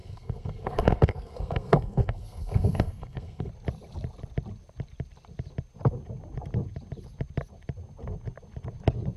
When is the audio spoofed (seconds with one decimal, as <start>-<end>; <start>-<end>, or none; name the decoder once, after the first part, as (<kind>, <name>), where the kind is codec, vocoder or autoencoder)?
0.0-3.5 (codec, SNAC)